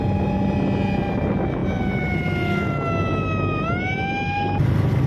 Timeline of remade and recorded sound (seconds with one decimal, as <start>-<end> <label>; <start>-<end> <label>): 0.0-5.1 recorded